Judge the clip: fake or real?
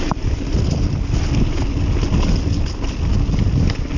real